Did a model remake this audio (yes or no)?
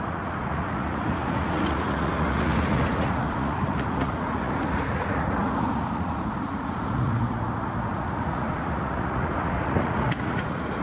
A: yes